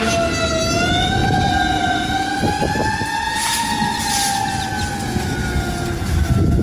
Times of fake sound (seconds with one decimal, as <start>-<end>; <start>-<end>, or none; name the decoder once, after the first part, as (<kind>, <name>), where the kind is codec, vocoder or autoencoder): none